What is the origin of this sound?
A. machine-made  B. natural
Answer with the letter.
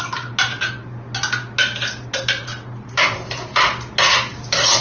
B